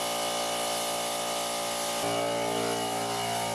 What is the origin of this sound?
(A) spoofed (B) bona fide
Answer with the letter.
B